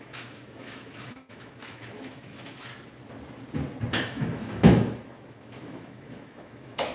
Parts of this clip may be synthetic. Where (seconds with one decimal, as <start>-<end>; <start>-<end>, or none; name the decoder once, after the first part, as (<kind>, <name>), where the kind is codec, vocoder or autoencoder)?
0.0-2.7 (autoencoder, DAC-VAE); 3.9-6.9